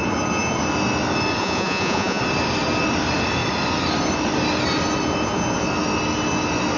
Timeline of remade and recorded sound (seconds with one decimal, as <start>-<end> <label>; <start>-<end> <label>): 0.0-1.4 recorded; 1.4-2.2 remade; 2.2-6.8 recorded